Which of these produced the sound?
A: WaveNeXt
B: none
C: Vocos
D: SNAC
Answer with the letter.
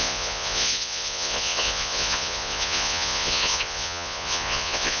C